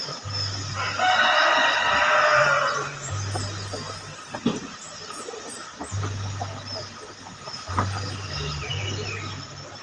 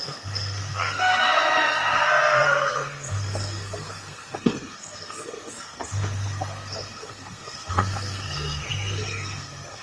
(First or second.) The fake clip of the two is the second